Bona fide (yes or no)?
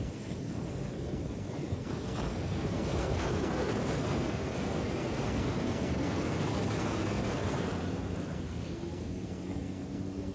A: no